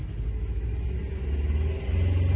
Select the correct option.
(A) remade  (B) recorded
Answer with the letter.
B